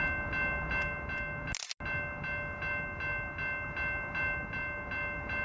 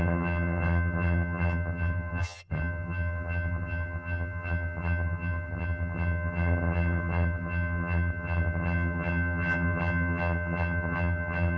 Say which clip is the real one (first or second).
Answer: first